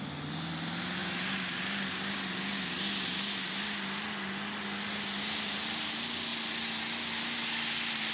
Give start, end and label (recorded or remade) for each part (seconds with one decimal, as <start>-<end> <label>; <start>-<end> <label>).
0.0-8.1 recorded